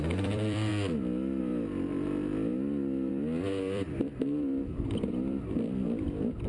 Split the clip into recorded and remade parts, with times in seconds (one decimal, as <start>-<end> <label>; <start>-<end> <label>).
0.0-0.7 remade; 0.7-1.4 recorded; 1.4-6.5 remade